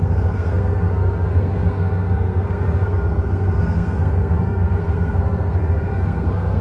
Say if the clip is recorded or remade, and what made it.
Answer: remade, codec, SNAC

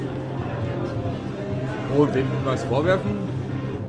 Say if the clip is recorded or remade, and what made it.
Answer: recorded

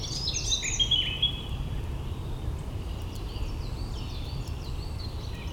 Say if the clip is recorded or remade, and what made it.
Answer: recorded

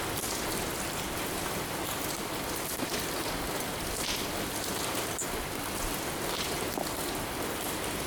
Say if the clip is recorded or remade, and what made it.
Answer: recorded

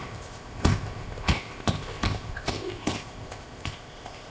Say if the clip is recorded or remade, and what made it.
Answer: remade, codec, ZipCodec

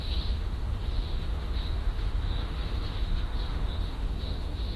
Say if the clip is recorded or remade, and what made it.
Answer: remade, autoencoder, DAC-VAE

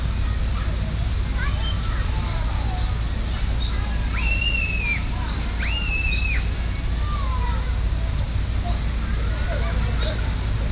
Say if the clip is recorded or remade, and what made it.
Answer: recorded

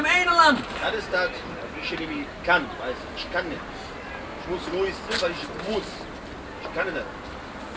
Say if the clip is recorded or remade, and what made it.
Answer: recorded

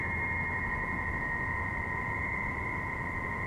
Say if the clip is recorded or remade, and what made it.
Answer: recorded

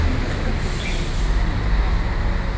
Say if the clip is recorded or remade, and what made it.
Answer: recorded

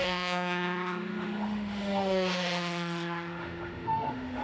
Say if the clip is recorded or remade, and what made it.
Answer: remade, autoencoder, DAC-VAE